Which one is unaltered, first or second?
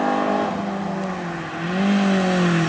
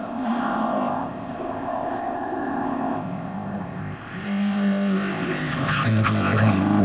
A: first